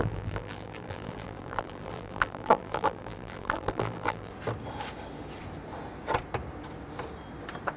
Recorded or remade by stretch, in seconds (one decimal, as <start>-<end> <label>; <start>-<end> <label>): 0.0-4.3 remade; 4.3-7.8 recorded

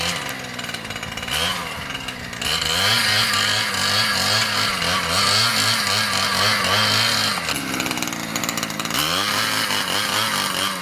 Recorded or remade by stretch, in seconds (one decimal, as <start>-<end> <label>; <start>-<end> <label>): 0.0-10.8 recorded

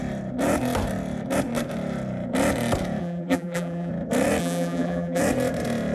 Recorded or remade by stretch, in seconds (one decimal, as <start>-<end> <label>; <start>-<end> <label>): 0.0-3.0 recorded; 3.0-3.9 remade; 3.9-4.4 recorded; 4.4-5.2 remade; 5.2-5.9 recorded

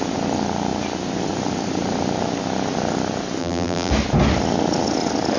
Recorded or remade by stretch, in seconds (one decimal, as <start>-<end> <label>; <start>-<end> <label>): 0.0-3.4 recorded; 3.4-3.9 remade; 3.9-5.4 recorded